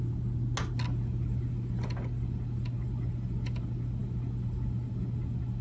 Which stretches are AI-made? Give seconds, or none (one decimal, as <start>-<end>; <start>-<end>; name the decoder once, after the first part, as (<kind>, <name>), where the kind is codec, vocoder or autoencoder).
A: none